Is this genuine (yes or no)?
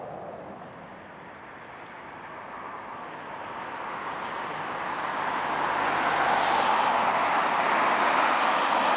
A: yes